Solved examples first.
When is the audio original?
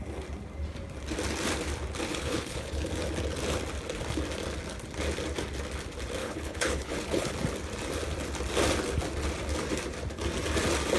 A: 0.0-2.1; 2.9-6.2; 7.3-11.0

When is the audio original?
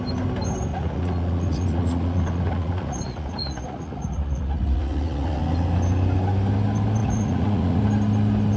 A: 0.0-0.7; 5.4-7.0; 7.8-8.6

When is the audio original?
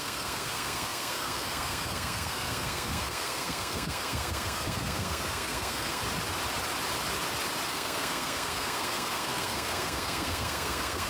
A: 6.0-7.7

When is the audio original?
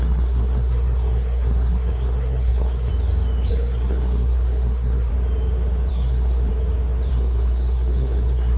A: 2.9-3.5; 5.1-5.9; 6.5-7.1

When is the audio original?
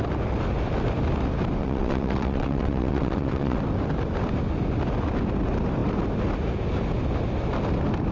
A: 0.0-1.6; 3.6-8.1